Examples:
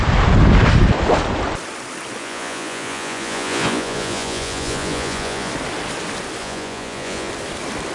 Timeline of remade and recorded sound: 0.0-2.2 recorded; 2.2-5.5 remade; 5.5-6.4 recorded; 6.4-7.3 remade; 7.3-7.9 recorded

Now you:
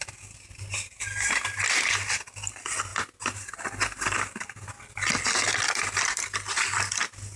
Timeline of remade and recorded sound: 0.0-7.4 recorded

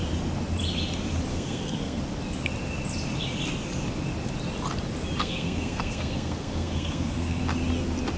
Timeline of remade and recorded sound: 0.0-1.3 recorded; 1.3-2.0 remade; 2.0-5.2 recorded; 5.2-7.4 remade; 7.4-8.2 recorded

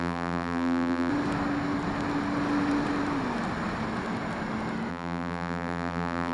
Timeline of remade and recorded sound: 0.0-1.1 remade; 1.1-4.9 recorded; 4.9-6.3 remade

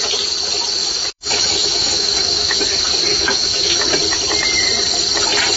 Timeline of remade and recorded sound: 0.0-0.8 recorded; 0.8-2.6 remade; 2.6-3.1 recorded; 3.1-3.8 remade; 3.8-5.6 recorded